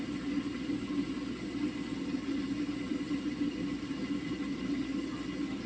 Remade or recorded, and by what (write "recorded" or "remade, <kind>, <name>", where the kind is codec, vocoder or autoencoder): recorded